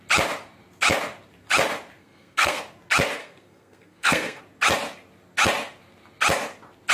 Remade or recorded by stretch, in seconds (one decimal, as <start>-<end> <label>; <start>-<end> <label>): 0.0-2.0 recorded; 2.0-2.6 remade; 2.6-3.2 recorded; 3.2-4.4 remade; 4.4-6.9 recorded